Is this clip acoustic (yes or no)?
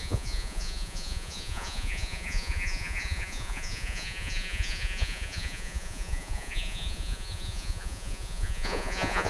no